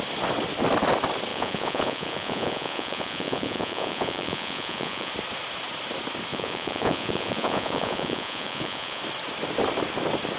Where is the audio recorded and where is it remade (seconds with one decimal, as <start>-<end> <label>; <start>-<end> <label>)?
0.0-1.3 recorded; 1.3-5.1 remade; 5.1-6.3 recorded; 6.3-9.0 remade; 9.0-10.4 recorded